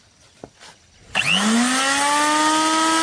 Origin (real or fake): real